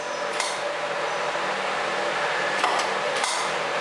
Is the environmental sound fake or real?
real